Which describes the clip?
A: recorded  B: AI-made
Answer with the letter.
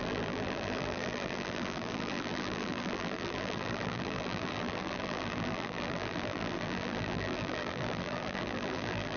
B